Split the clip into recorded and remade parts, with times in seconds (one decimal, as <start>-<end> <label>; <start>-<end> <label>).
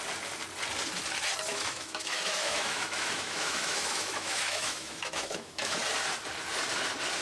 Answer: 0.0-1.5 recorded; 1.5-5.8 remade; 5.8-7.2 recorded